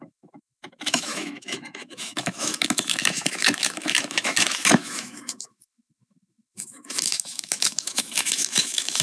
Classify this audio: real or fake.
fake